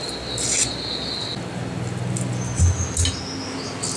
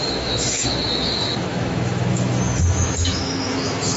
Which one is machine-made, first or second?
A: second